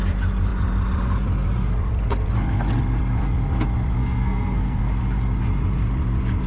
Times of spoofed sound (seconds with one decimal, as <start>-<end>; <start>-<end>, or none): 4.0-4.8